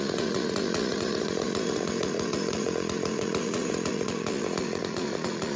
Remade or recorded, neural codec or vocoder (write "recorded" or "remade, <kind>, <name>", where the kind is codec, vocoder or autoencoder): remade, vocoder, Vocos